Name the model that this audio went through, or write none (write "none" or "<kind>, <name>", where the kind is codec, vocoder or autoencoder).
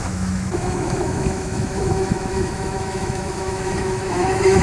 autoencoder, DAC-VAE